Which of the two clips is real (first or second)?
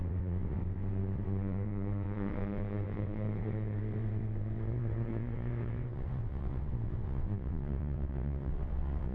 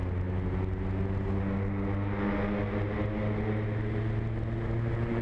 second